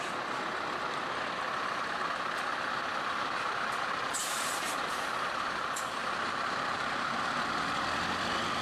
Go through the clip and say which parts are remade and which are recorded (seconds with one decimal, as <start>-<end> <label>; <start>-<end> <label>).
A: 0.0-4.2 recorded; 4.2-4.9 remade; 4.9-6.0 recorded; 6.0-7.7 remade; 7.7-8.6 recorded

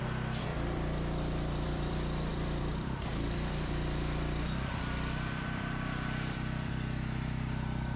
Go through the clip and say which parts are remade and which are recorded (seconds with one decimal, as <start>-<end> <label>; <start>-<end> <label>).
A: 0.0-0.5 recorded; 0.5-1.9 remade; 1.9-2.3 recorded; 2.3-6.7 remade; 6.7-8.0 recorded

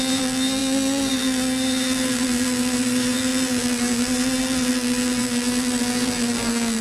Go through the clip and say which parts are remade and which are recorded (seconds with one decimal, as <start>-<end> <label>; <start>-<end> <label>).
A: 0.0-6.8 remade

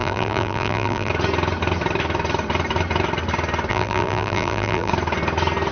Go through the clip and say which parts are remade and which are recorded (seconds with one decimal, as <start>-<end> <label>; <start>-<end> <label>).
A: 0.0-1.1 remade; 1.1-3.7 recorded; 3.7-4.9 remade; 4.9-5.7 recorded